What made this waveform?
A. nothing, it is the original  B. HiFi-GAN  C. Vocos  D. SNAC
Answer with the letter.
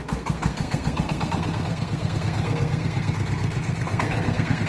D